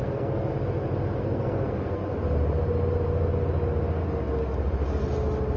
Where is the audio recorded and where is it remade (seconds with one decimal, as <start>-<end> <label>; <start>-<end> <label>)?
0.0-0.5 remade; 0.5-1.2 recorded; 1.2-2.0 remade; 2.0-5.6 recorded